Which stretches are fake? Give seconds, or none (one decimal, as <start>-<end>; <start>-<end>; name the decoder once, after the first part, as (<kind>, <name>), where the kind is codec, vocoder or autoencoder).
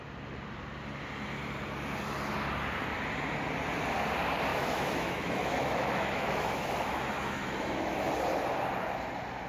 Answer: 4.5-8.1 (autoencoder, DAC-VAE)